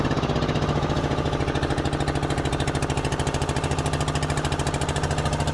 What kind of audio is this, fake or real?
real